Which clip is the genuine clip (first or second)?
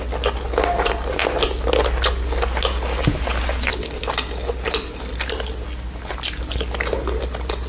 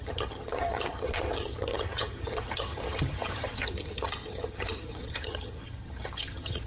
first